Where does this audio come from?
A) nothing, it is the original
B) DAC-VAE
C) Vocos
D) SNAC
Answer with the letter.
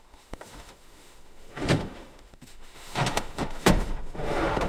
B